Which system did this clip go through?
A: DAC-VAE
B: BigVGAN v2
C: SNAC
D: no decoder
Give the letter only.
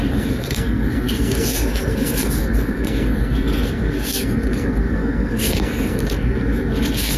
C